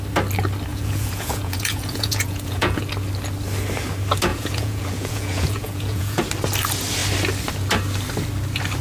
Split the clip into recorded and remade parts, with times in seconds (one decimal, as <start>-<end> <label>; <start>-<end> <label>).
0.0-0.7 recorded; 0.7-2.8 remade; 2.8-4.3 recorded; 4.3-6.2 remade; 6.2-8.8 recorded